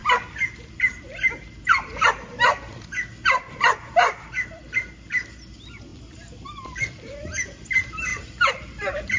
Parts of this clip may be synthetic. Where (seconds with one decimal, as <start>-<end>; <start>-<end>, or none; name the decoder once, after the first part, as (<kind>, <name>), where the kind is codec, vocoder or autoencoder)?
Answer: 8.1-8.6 (vocoder, BigVGAN v2)